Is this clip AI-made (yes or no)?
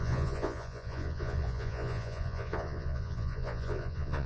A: yes